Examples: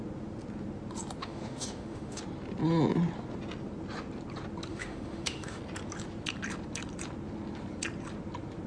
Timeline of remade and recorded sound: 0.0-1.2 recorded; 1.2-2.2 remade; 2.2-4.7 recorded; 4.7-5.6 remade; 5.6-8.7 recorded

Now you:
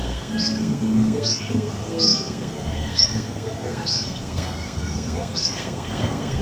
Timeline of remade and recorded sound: 0.0-6.4 remade

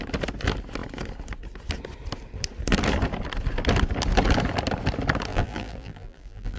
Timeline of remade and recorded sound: 0.0-5.3 recorded; 5.3-6.6 remade

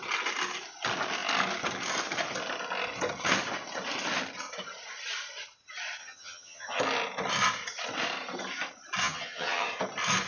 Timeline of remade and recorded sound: 0.0-6.0 recorded; 6.0-6.8 remade; 6.8-9.0 recorded; 9.0-9.8 remade; 9.8-10.3 recorded

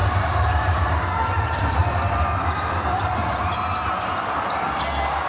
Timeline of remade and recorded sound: 0.0-1.8 remade; 1.8-5.3 recorded

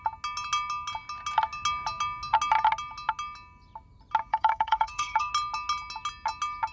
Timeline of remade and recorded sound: 0.0-4.3 recorded; 4.3-5.3 remade; 5.3-6.7 recorded

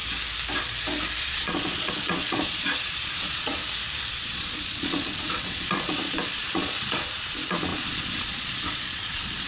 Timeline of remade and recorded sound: 0.0-1.2 recorded; 1.2-3.6 remade; 3.6-4.1 recorded; 4.1-9.5 remade

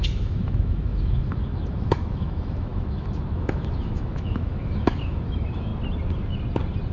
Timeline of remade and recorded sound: 0.0-5.7 remade; 5.7-6.9 recorded